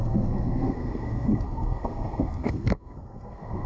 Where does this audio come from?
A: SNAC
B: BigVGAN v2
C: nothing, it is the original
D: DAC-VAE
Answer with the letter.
A